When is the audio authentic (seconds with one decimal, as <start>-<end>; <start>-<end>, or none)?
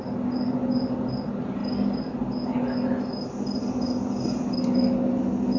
0.0-5.6